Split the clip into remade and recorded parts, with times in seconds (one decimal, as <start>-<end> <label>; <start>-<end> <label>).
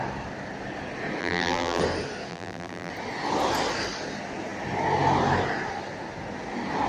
0.0-1.2 recorded; 1.2-1.8 remade; 1.8-2.3 recorded; 2.3-2.9 remade; 2.9-6.9 recorded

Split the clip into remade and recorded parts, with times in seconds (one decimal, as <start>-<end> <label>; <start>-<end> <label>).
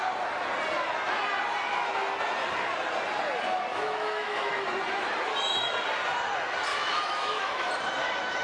0.0-3.7 recorded; 3.7-4.5 remade; 4.5-6.7 recorded; 6.7-7.7 remade; 7.7-8.4 recorded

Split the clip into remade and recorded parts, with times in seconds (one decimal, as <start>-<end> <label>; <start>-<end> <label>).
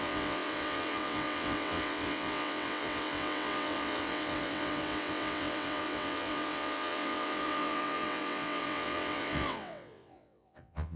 0.0-11.0 remade